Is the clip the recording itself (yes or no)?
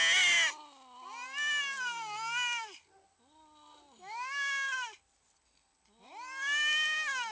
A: yes